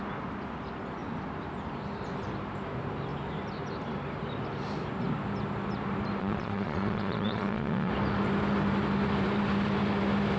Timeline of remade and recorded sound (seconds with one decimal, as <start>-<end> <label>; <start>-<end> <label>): 0.0-6.2 recorded; 6.2-7.9 remade; 7.9-10.4 recorded